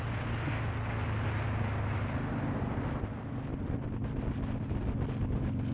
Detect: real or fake real